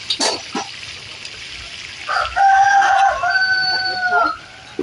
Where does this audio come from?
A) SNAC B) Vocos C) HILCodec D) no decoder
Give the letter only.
D